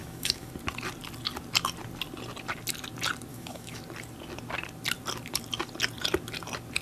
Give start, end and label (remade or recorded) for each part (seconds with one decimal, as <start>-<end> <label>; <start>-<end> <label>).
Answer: 0.0-0.5 remade; 0.5-3.3 recorded; 3.3-3.8 remade; 3.8-6.8 recorded